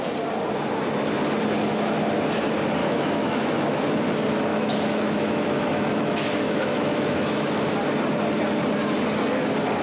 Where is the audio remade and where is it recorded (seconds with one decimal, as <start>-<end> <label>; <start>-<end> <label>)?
0.0-2.8 recorded; 2.8-3.8 remade; 3.8-4.5 recorded; 4.5-7.7 remade; 7.7-9.8 recorded